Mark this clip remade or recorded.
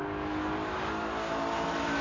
recorded